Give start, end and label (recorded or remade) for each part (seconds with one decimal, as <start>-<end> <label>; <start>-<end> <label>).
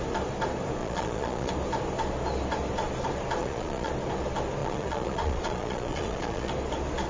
0.0-0.8 recorded; 0.8-1.5 remade; 1.5-3.4 recorded; 3.4-3.9 remade; 3.9-4.6 recorded; 4.6-6.5 remade; 6.5-7.1 recorded